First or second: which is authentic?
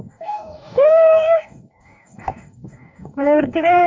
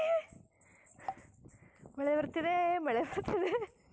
second